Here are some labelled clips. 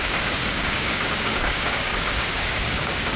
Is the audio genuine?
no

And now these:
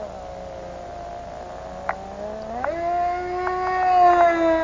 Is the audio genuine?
yes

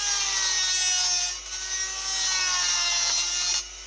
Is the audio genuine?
yes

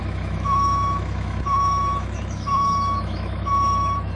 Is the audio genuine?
no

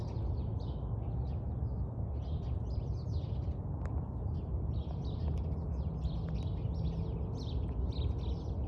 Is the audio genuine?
yes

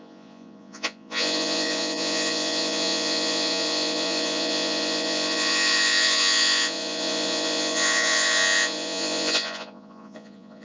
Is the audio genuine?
no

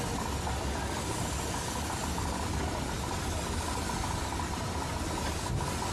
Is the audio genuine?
yes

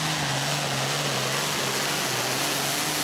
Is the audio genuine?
yes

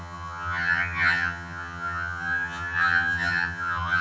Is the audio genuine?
no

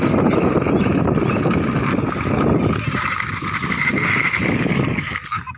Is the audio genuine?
yes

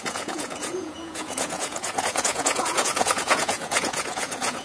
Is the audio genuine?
no